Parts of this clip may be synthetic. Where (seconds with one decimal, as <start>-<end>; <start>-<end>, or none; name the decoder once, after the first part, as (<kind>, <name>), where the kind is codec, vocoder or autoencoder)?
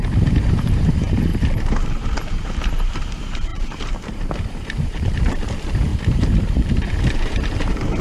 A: 0.0-8.0 (vocoder, BigVGAN v2)